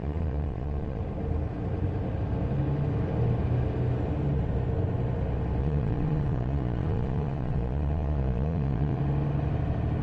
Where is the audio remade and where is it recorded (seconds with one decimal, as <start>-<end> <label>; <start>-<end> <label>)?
0.0-1.0 remade; 1.0-5.6 recorded; 5.6-9.0 remade; 9.0-10.0 recorded